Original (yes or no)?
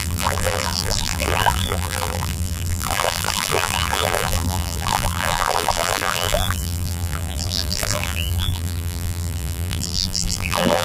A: no